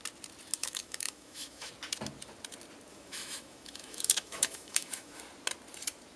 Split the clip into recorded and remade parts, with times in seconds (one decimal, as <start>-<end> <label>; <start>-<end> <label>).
0.0-0.6 recorded; 0.6-1.7 remade; 1.7-2.9 recorded; 2.9-5.2 remade; 5.2-6.2 recorded